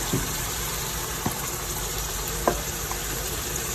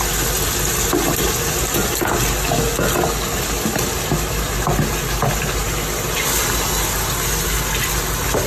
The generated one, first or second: first